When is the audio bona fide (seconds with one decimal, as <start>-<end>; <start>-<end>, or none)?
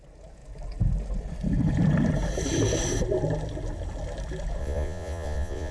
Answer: 0.0-4.6